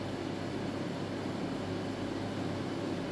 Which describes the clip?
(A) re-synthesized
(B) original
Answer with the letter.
B